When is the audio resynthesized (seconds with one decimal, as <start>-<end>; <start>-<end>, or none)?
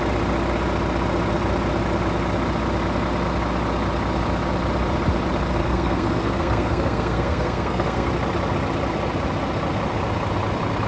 5.6-8.1